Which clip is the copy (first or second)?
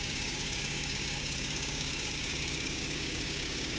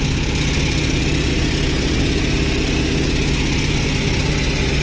first